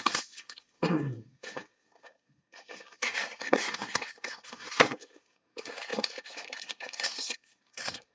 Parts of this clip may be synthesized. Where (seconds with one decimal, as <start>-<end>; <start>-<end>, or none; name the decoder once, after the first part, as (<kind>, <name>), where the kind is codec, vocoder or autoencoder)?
0.0-8.1 (codec, SNAC)